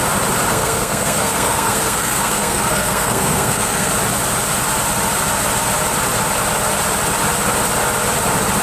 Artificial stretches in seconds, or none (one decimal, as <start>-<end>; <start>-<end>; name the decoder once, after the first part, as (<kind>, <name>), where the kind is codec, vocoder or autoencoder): 0.5-3.9 (codec, SNAC)